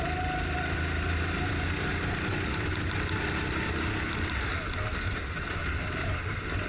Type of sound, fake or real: real